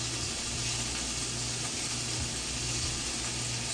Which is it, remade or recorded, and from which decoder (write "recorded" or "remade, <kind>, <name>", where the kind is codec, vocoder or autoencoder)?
recorded